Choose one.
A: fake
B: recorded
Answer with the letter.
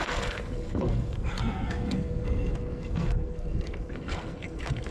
A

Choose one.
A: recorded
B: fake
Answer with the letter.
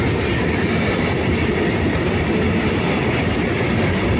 A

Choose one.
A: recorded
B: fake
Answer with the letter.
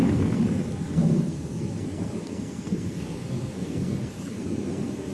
B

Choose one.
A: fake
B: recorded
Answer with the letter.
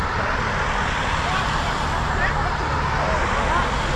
B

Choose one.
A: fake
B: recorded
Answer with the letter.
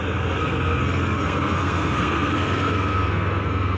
A